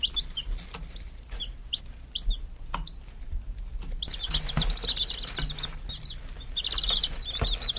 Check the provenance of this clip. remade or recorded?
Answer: recorded